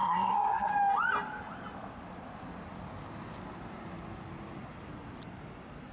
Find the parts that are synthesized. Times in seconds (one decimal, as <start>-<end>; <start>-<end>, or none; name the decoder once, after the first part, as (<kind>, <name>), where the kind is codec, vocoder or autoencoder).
0.0-0.7 (codec, SNAC)